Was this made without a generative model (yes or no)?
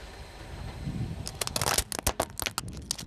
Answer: yes